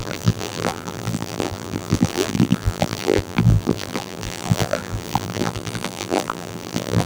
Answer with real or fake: fake